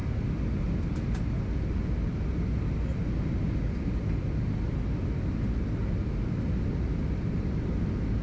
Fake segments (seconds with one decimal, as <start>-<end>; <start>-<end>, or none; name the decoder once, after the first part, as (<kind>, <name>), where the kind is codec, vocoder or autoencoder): none